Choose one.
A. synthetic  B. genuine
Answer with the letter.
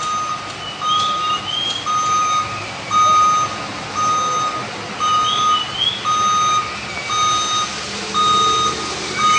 B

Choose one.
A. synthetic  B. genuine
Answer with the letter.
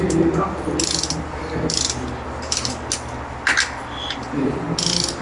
B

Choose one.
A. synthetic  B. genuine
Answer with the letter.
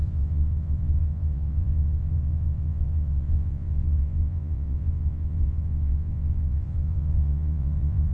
A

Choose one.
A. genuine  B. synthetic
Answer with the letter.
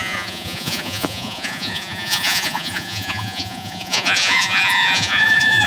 B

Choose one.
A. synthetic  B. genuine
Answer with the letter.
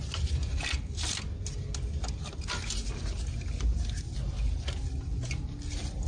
B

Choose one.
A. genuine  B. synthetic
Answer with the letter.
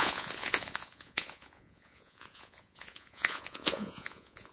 B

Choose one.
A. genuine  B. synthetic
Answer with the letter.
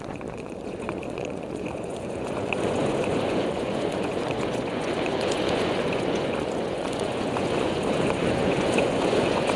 B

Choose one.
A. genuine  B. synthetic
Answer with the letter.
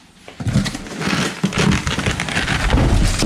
A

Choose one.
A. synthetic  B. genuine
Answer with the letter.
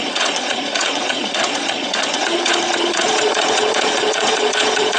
A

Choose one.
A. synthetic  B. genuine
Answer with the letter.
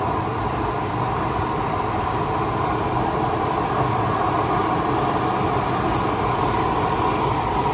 B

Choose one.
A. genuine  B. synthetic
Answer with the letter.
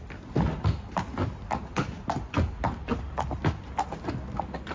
A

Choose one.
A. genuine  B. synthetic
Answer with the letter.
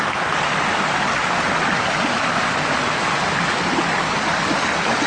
A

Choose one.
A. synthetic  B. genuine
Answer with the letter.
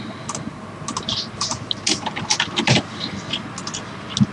B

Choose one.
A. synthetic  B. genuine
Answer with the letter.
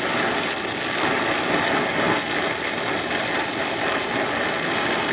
B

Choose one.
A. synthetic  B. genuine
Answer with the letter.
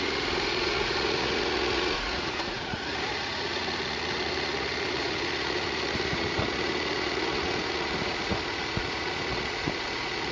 A